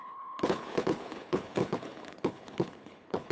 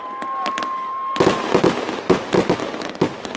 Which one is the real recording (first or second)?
second